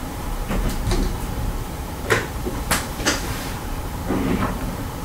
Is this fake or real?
fake